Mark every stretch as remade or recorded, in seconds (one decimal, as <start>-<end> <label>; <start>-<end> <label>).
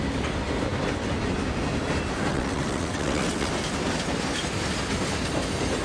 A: 0.0-2.3 recorded; 2.3-3.5 remade; 3.5-5.8 recorded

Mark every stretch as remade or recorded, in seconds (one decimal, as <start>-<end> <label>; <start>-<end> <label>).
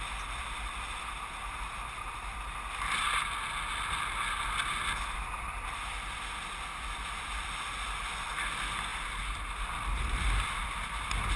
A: 0.0-11.4 recorded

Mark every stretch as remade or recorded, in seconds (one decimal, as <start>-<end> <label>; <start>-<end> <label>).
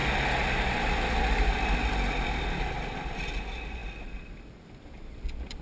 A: 0.0-5.6 recorded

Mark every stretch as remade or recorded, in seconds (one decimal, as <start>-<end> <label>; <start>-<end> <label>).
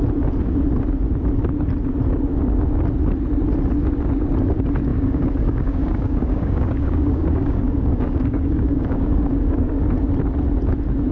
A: 0.0-4.9 recorded; 4.9-9.8 remade; 9.8-11.1 recorded